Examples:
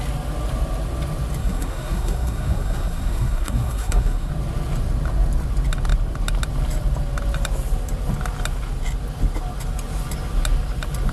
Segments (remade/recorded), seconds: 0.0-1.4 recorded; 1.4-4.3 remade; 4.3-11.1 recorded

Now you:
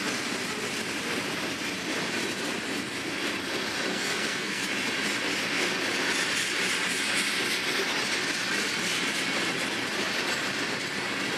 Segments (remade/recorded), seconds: 0.0-3.9 recorded; 3.9-4.7 remade; 4.7-11.4 recorded

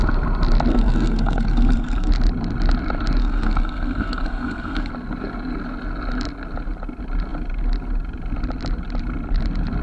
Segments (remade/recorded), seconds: 0.0-0.7 recorded; 0.7-2.1 remade; 2.1-3.2 recorded; 3.2-4.9 remade; 4.9-9.8 recorded